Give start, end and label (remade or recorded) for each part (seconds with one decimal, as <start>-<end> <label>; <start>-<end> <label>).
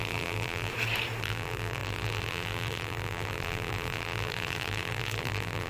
0.0-0.7 remade; 0.7-1.2 recorded; 1.2-5.7 remade